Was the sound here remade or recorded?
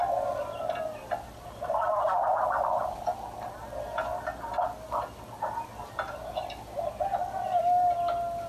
recorded